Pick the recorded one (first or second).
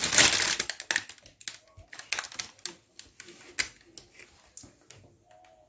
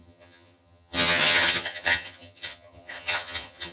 first